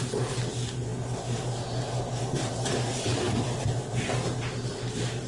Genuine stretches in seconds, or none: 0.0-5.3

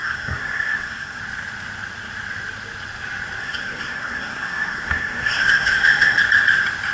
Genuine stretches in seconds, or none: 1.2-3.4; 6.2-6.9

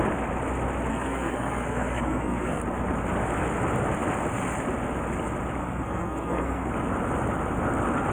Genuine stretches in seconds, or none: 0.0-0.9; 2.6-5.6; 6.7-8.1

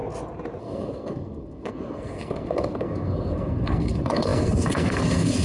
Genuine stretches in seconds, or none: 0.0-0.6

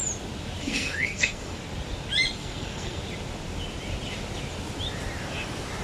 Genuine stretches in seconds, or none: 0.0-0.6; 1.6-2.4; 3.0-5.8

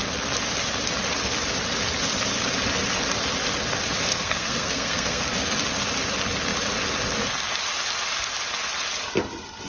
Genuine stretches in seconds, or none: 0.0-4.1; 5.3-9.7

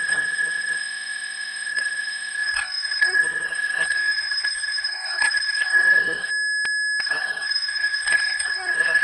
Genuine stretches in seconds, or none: 6.3-7.0

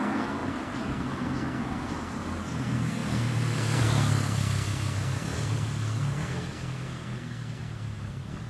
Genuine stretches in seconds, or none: none